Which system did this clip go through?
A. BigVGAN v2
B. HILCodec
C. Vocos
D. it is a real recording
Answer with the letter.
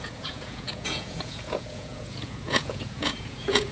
C